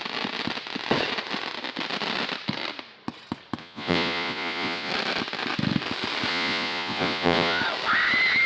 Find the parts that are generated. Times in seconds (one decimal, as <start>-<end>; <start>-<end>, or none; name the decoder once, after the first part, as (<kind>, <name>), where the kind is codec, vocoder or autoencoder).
3.6-4.9 (vocoder, Vocos); 6.3-7.6